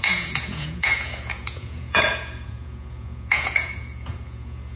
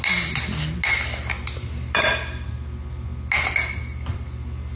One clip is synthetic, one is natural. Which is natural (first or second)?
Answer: second